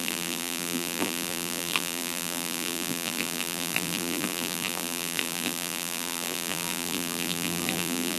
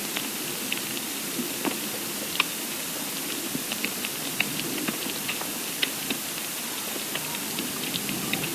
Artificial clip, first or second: first